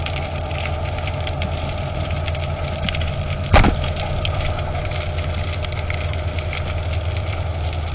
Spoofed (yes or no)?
no